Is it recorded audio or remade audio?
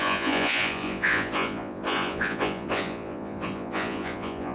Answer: remade